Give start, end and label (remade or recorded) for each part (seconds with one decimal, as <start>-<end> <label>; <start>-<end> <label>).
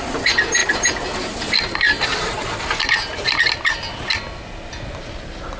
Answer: 0.0-5.6 recorded